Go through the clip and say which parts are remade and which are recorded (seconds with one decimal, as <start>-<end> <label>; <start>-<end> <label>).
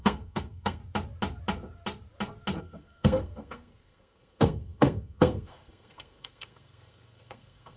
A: 0.0-0.8 remade; 0.8-2.6 recorded; 2.6-7.8 remade